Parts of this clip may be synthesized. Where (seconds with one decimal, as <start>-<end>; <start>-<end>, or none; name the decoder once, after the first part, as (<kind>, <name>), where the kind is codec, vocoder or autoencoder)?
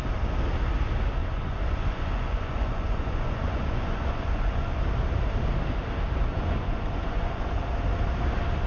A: 1.2-4.8 (vocoder, Vocos); 6.3-7.6